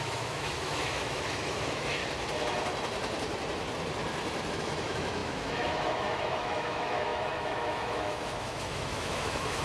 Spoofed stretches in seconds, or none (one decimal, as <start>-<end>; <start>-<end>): 0.0-2.0; 4.5-9.6